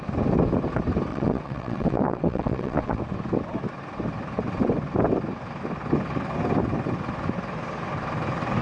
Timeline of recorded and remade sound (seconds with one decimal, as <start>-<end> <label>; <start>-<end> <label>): 0.0-1.1 recorded; 1.1-3.0 remade; 3.0-8.6 recorded